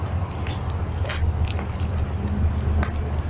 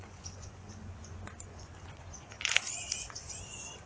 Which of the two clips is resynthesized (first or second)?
second